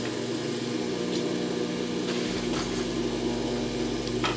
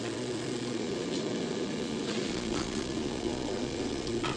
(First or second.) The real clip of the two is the first